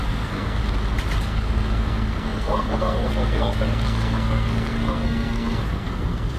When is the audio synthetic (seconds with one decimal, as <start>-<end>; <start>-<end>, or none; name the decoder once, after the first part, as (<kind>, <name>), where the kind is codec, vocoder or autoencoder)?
0.0-0.6 (codec, SNAC); 1.2-6.4